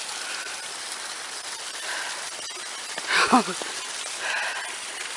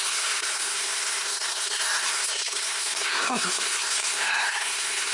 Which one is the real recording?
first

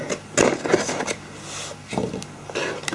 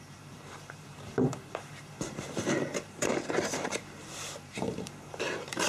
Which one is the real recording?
first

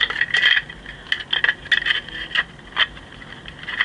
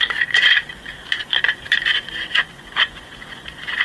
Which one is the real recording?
first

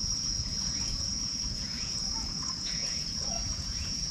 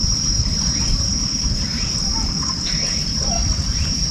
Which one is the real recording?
second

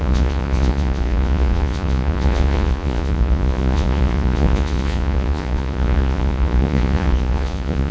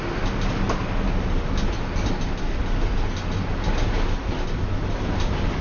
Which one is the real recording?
second